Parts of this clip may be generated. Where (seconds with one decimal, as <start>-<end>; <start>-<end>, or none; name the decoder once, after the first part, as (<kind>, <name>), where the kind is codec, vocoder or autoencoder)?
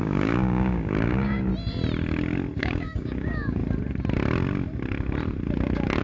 0.0-1.5 (codec, DAC); 2.6-3.6